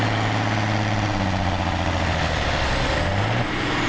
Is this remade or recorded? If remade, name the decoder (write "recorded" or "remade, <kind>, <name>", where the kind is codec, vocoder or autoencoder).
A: recorded